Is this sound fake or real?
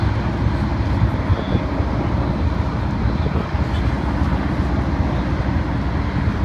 real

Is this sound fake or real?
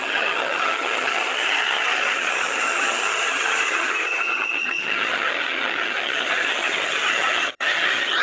fake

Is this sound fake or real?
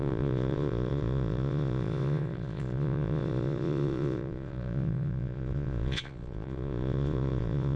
fake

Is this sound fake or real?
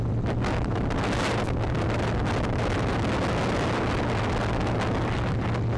real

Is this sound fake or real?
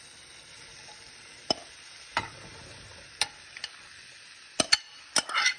real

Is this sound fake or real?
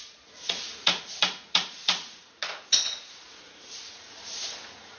fake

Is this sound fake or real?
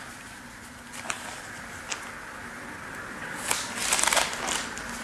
real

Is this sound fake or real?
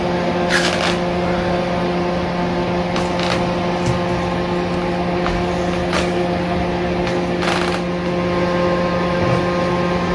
real